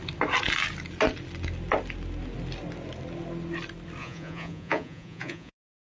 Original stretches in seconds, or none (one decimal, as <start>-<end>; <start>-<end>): 0.0-4.0